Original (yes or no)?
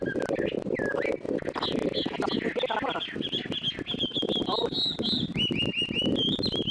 yes